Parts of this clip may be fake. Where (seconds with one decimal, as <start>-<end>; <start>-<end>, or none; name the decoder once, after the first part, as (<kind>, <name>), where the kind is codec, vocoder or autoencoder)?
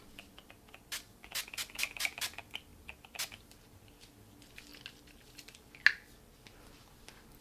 none